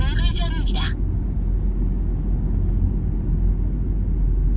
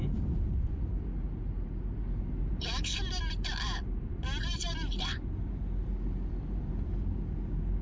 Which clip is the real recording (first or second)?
first